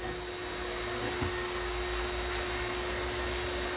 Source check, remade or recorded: recorded